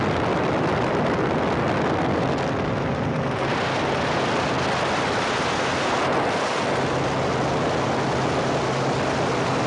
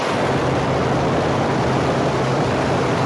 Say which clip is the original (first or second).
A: first